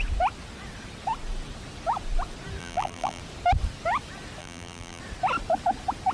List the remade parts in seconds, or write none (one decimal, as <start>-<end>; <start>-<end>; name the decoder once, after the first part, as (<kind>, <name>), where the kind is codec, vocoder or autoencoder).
2.6-3.2 (vocoder, BigVGAN v2); 4.4-5.0